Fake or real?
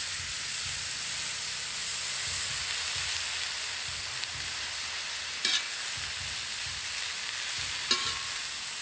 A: real